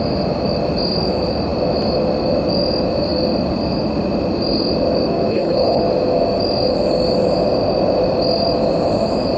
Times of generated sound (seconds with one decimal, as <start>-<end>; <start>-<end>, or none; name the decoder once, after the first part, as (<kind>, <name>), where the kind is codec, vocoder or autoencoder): 5.3-5.8 (codec, HILCodec)